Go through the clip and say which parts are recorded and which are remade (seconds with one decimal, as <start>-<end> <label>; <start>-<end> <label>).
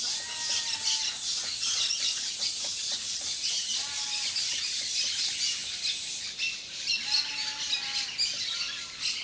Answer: 0.0-1.3 recorded; 1.3-3.5 remade; 3.5-9.2 recorded